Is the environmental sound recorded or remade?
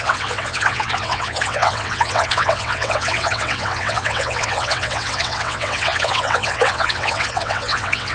remade